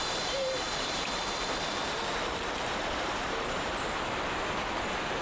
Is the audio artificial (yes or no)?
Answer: yes